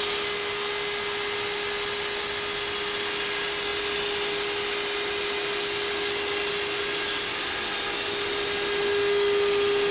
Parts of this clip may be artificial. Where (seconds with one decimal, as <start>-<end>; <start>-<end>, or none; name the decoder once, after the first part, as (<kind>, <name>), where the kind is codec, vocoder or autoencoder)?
none